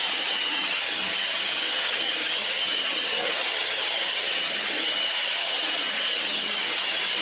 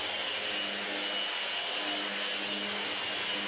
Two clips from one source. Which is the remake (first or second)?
first